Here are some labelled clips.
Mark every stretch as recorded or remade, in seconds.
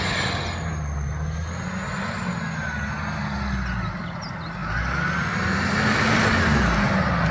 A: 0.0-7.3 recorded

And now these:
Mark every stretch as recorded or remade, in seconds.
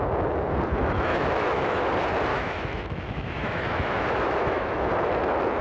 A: 0.0-1.1 recorded; 1.1-1.9 remade; 1.9-2.3 recorded; 2.3-4.9 remade; 4.9-5.6 recorded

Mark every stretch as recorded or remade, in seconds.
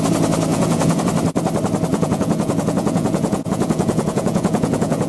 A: 0.0-0.5 recorded; 0.5-1.0 remade; 1.0-1.9 recorded; 1.9-5.1 remade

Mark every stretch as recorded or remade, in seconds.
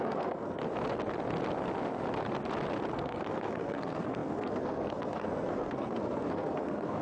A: 0.0-0.6 remade; 0.6-2.9 recorded; 2.9-7.0 remade